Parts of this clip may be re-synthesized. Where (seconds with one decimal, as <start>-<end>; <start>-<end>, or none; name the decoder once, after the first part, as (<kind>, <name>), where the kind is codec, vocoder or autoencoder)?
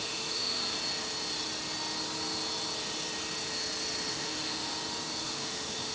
0.0-0.6 (autoencoder, DAC-VAE); 4.1-4.7; 5.2-5.9